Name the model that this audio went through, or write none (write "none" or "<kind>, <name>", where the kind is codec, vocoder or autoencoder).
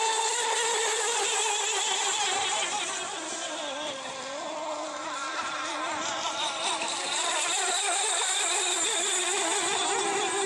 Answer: none